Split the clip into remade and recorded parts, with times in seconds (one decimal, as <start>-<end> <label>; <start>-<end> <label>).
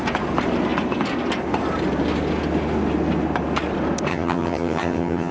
0.0-4.1 recorded; 4.1-5.3 remade